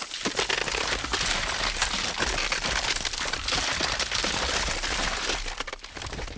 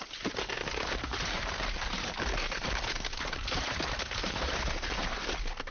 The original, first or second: first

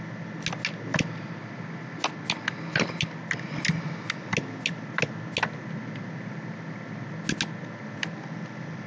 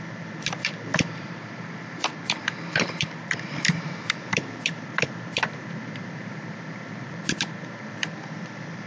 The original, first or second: first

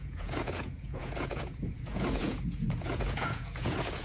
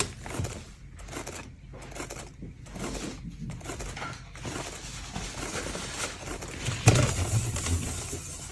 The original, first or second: second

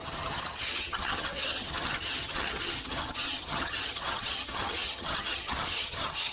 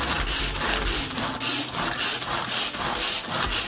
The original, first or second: second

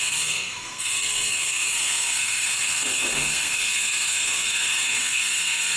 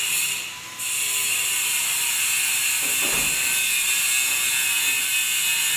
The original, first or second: second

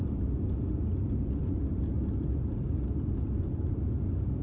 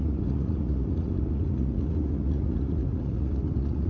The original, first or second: first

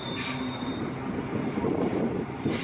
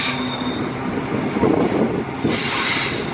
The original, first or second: second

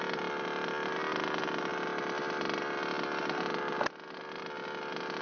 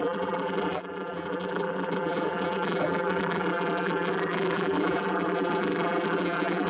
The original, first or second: first